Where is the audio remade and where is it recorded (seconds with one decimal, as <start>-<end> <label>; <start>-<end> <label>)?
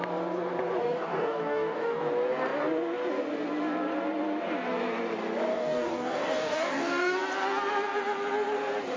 0.0-0.8 recorded; 0.8-2.0 remade; 2.0-5.5 recorded; 5.5-7.2 remade; 7.2-9.0 recorded